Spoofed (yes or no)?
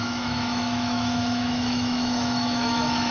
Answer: yes